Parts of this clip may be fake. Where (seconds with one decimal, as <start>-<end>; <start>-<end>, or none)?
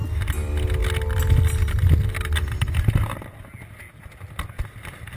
none